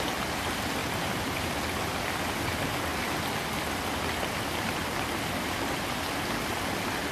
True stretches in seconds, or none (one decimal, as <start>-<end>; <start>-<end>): 0.0-0.8; 1.6-7.1